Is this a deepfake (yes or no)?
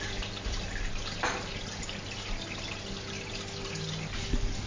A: no